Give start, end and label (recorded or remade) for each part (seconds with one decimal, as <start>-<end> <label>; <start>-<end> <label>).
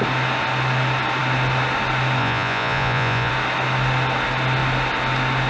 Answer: 0.0-2.2 recorded; 2.2-3.3 remade; 3.3-5.5 recorded